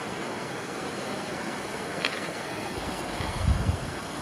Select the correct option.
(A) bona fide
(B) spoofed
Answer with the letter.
B